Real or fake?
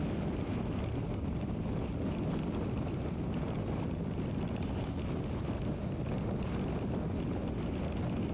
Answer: real